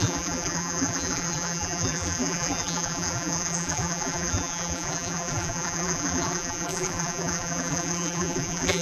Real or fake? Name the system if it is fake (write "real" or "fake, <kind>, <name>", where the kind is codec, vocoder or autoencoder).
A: fake, vocoder, BigVGAN v2